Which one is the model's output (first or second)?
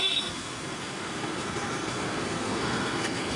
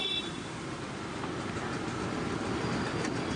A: first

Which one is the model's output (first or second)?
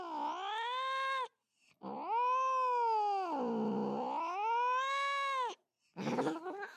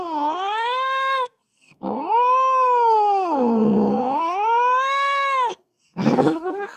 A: second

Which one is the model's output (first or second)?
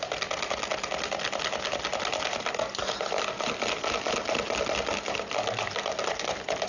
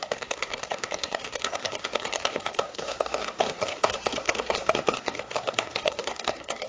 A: second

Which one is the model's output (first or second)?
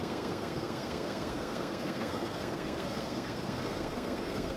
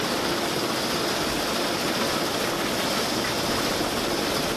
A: first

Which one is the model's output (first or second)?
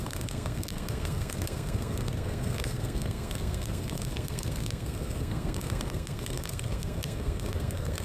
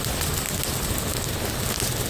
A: first